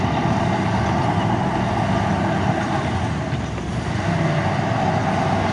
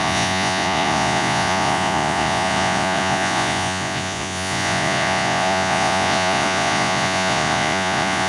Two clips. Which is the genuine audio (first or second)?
first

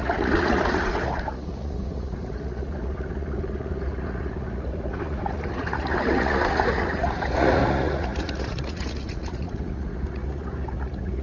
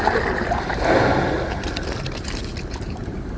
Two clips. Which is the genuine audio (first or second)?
second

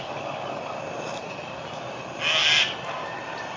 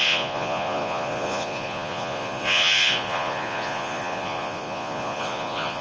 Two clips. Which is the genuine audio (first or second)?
first